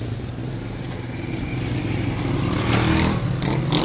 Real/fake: real